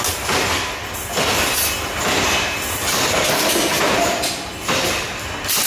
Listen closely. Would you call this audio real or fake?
real